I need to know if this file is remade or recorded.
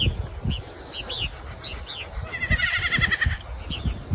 recorded